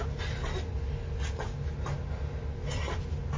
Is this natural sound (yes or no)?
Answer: yes